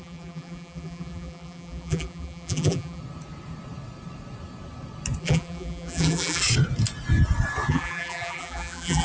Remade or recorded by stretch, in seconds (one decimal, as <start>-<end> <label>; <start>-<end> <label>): 0.0-3.0 remade; 3.0-5.2 recorded; 5.2-6.4 remade; 6.4-7.7 recorded; 7.7-9.0 remade